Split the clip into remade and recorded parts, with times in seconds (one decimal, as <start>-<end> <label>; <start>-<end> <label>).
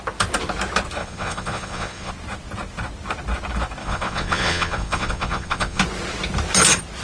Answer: 0.0-1.0 recorded; 1.0-2.1 remade; 2.1-3.8 recorded; 3.8-5.8 remade; 5.8-7.0 recorded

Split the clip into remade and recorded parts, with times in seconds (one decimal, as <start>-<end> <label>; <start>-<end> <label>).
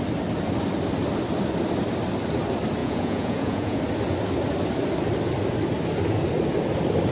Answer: 0.0-2.8 recorded; 2.8-3.8 remade; 3.8-7.1 recorded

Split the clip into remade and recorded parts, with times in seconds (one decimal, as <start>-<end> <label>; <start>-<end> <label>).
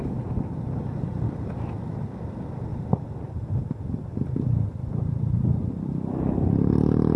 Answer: 0.0-7.2 remade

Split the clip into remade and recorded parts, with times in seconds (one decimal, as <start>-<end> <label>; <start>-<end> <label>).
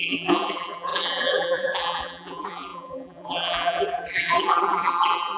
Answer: 0.0-5.4 remade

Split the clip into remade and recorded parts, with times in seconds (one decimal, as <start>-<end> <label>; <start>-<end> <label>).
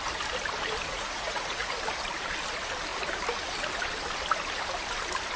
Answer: 0.0-0.9 recorded; 0.9-1.8 remade; 1.8-5.4 recorded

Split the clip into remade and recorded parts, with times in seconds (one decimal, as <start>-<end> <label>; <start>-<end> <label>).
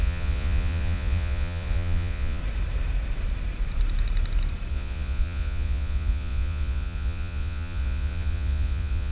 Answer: 0.0-2.4 remade; 2.4-4.7 recorded; 4.7-9.1 remade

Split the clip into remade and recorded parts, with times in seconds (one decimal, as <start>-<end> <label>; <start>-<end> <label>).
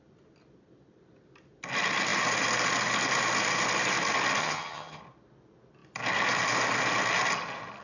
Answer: 0.0-4.4 recorded; 4.4-5.0 remade; 5.0-7.8 recorded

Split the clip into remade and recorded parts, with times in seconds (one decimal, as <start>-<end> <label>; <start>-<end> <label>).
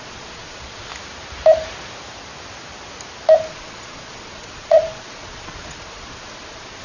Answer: 0.0-0.9 remade; 0.9-3.5 recorded; 3.5-6.8 remade